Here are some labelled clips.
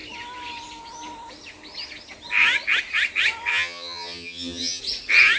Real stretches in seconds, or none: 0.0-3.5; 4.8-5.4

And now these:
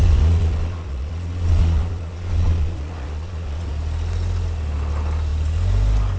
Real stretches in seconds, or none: 3.7-6.2

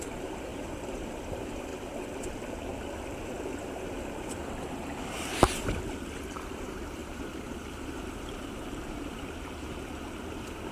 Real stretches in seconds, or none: 1.7-4.7

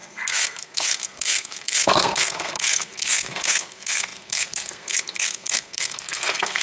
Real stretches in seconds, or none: none

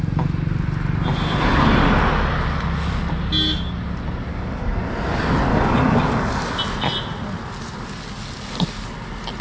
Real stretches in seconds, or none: 0.0-4.3; 4.9-5.5; 6.5-9.4